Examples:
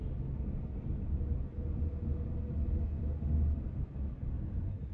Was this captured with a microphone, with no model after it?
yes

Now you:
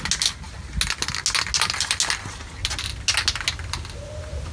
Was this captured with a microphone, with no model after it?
yes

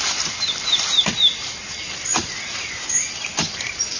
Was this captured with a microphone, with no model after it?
yes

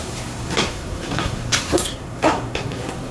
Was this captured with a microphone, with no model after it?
no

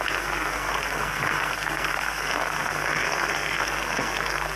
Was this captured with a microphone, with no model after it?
no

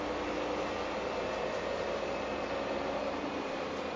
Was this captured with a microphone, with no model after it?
yes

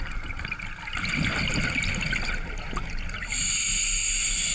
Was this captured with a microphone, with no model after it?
yes